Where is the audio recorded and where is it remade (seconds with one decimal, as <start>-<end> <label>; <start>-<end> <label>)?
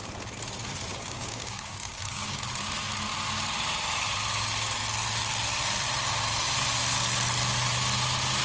0.0-0.9 recorded; 0.9-2.4 remade; 2.4-8.4 recorded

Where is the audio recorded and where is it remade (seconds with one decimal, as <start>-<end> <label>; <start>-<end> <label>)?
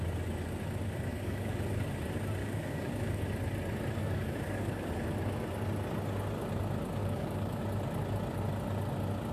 0.0-1.1 recorded; 1.1-1.8 remade; 1.8-2.4 recorded; 2.4-3.2 remade; 3.2-4.0 recorded; 4.0-4.9 remade; 4.9-7.0 recorded; 7.0-7.6 remade; 7.6-9.3 recorded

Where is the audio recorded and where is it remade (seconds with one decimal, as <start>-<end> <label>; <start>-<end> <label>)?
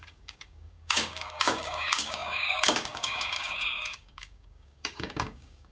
0.0-5.7 remade